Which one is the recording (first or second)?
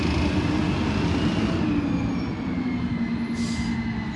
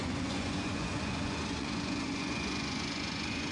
first